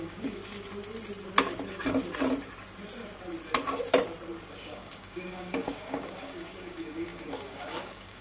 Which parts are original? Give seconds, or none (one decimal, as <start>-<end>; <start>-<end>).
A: 0.4-4.5